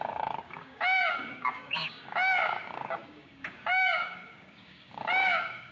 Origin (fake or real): fake